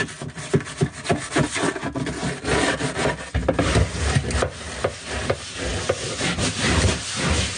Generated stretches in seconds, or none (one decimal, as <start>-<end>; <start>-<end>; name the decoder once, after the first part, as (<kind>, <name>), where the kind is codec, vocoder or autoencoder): none